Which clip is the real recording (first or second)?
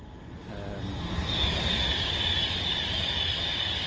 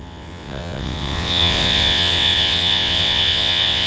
first